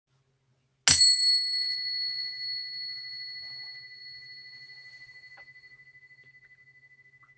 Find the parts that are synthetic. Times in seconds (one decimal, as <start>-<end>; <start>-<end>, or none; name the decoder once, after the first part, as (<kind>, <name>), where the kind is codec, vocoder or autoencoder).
none